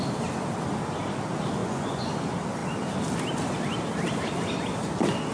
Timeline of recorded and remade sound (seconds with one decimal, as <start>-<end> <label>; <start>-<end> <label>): 0.0-1.6 recorded; 1.6-2.1 remade; 2.1-5.3 recorded